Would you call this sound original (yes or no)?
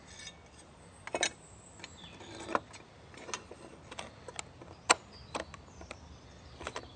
yes